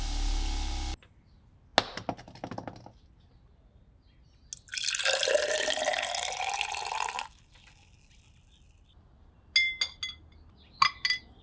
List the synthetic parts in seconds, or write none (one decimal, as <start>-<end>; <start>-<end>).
none